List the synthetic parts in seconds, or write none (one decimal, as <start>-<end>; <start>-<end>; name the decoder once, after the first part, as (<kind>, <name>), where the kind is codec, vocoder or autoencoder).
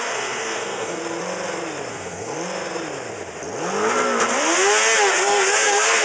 0.0-1.0 (codec, SNAC); 1.9-2.3; 5.1-6.0